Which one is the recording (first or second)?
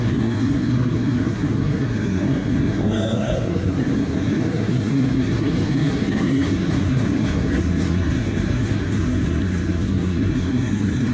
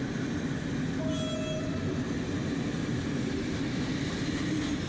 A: second